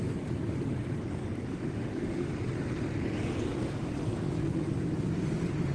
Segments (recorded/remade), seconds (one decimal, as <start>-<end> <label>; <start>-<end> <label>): 0.0-1.5 recorded; 1.5-2.3 remade; 2.3-5.7 recorded